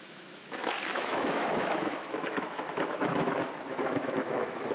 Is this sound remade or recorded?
remade